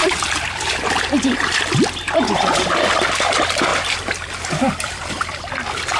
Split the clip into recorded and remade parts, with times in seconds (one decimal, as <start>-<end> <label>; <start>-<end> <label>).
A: 0.0-0.6 remade; 0.6-5.0 recorded; 5.0-5.5 remade; 5.5-6.0 recorded